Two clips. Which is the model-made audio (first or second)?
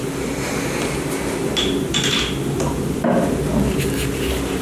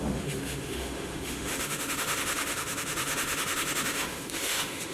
second